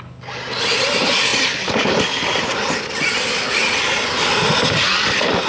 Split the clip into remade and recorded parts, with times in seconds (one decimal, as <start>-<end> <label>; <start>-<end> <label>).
0.0-5.5 recorded